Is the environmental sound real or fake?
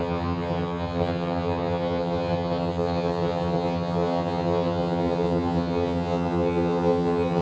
fake